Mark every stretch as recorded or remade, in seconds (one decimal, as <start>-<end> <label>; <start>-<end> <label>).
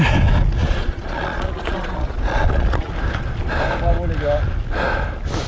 0.0-0.6 recorded; 0.6-2.9 remade; 2.9-5.5 recorded